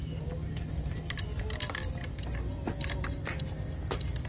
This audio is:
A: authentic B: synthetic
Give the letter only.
A